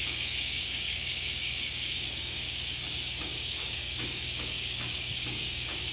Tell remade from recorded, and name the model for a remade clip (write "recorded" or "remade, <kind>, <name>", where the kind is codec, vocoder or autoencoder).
remade, codec, DAC